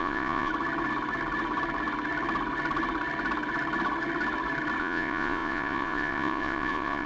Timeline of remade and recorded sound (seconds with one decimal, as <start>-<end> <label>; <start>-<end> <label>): 0.0-0.5 remade; 0.5-4.8 recorded; 4.8-7.1 remade